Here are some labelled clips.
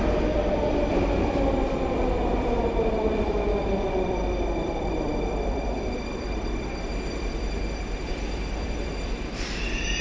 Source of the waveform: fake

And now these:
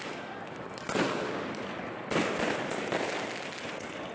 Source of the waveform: real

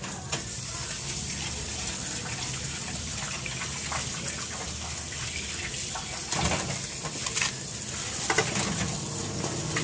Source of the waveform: real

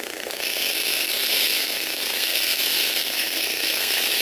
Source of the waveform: fake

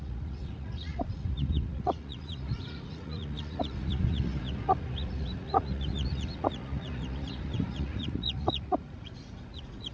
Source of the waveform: fake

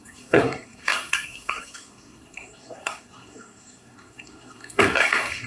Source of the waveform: fake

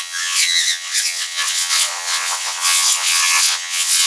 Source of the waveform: fake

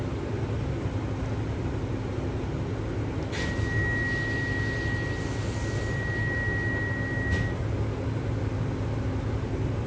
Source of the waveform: real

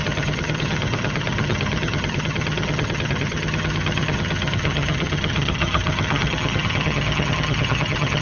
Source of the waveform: fake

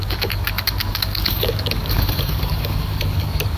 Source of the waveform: fake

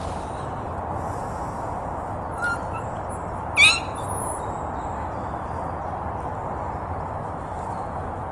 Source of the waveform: real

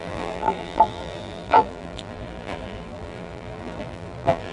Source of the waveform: fake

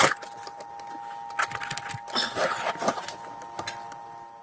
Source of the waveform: real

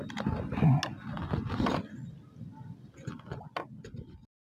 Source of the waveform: real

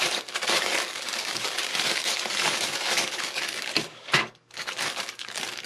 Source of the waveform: fake